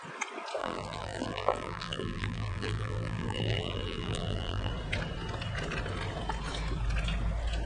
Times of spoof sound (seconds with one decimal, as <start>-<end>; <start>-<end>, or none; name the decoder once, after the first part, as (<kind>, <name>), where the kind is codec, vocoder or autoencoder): 0.6-4.7 (vocoder, BigVGAN v2)